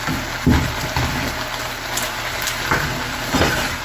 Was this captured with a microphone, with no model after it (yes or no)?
yes